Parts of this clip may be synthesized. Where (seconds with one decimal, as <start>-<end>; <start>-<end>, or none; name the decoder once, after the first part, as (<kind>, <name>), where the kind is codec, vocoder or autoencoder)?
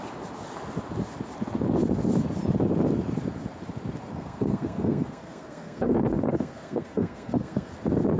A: 4.1-7.7 (codec, SNAC)